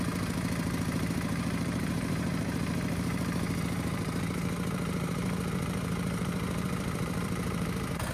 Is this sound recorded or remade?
remade